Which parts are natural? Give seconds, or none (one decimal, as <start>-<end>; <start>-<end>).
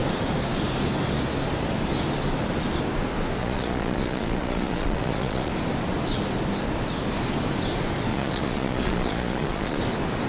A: 0.0-3.4; 5.5-8.1; 9.8-10.3